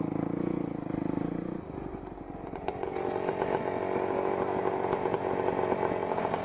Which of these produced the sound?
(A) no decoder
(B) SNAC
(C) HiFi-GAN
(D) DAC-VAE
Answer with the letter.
A